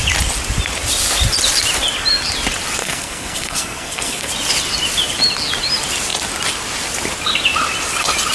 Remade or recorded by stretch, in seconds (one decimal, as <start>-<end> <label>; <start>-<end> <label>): 0.0-2.8 recorded; 2.8-4.3 remade; 4.3-8.3 recorded